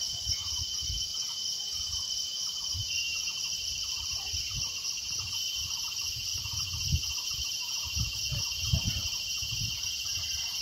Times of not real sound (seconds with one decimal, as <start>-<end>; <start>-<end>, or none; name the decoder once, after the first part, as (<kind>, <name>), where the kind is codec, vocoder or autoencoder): 1.1-1.8 (vocoder, BigVGAN v2); 2.8-4.7